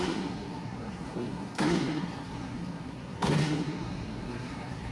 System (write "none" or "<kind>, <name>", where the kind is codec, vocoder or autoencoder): codec, SNAC